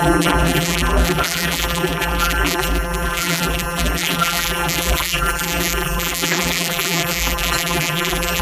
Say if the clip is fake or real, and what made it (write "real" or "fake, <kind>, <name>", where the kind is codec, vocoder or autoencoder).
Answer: fake, vocoder, BigVGAN v2